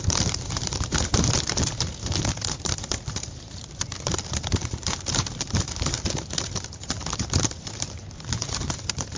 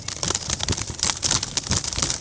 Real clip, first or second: second